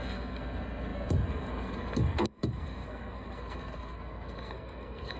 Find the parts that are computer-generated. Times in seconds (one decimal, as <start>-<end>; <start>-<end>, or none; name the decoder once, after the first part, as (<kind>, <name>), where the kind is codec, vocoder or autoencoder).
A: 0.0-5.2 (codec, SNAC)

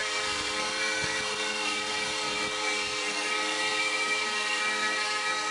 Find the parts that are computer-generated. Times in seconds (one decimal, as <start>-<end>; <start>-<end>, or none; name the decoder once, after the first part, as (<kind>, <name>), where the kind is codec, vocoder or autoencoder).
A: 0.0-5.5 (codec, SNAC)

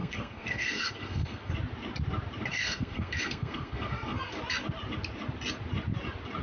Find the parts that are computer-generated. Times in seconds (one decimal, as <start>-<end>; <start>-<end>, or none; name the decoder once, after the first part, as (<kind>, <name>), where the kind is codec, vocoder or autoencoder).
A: 0.0-1.5 (codec, SNAC); 2.5-4.3

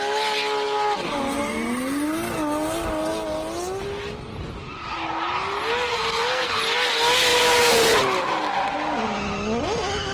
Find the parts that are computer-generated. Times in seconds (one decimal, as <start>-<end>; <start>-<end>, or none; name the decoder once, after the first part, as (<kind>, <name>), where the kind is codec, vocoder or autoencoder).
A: 5.9-6.6 (codec, SNAC)

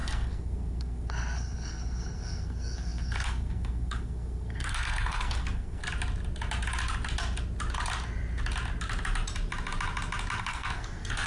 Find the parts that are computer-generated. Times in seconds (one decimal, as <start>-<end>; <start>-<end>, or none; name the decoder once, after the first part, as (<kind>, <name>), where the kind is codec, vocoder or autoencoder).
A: 0.0-5.8 (codec, SNAC); 10.4-11.3